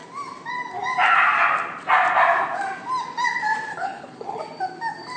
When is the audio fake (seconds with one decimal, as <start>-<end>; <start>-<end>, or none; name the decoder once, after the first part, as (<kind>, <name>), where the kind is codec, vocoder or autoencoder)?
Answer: 3.7-4.4 (codec, HILCodec)